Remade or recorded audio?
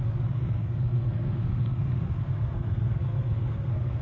remade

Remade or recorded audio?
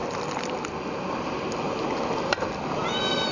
recorded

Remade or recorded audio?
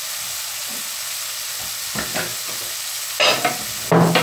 recorded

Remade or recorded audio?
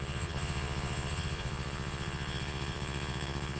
remade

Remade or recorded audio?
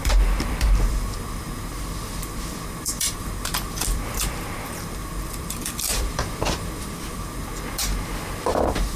remade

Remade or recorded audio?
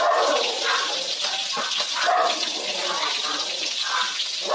recorded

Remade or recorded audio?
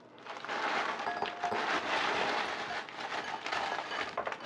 recorded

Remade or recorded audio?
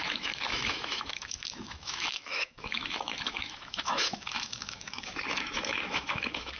remade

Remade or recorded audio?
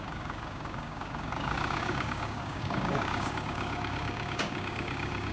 remade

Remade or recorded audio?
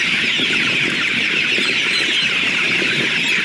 remade